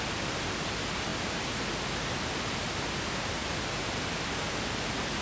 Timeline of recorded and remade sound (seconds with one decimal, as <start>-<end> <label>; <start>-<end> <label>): 0.0-5.2 recorded